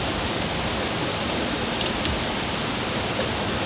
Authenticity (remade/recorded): recorded